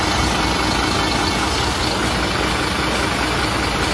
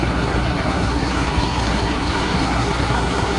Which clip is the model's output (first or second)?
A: second